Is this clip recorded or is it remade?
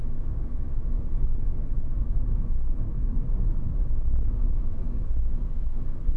remade